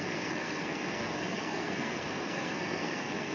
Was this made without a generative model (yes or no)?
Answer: no